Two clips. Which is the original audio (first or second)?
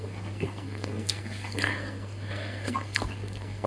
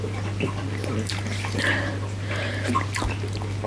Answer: second